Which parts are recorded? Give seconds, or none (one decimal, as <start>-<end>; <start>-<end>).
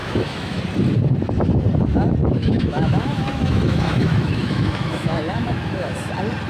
0.6-2.2; 6.1-6.5